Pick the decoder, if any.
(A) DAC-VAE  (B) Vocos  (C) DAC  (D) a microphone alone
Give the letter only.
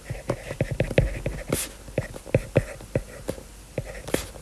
D